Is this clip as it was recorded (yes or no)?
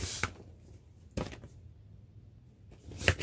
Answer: yes